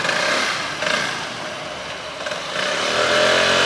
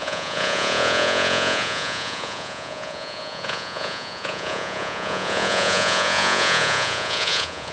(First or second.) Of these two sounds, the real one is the first